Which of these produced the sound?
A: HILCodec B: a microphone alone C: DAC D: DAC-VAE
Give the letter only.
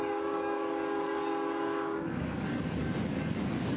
C